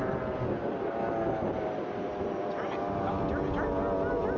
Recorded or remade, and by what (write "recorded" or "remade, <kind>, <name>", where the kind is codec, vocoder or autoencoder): recorded